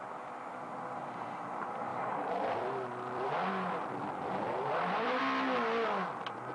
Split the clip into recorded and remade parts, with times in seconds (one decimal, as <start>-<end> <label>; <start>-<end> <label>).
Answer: 0.0-1.9 recorded; 1.9-5.2 remade; 5.2-6.5 recorded